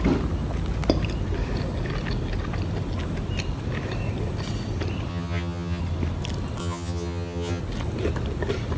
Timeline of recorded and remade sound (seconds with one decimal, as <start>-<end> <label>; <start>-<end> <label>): 0.0-5.1 recorded; 5.1-5.8 remade; 5.8-6.6 recorded; 6.6-7.6 remade; 7.6-8.8 recorded